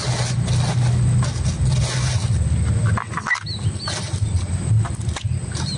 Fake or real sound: real